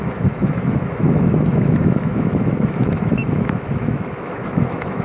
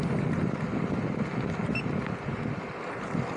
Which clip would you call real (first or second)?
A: second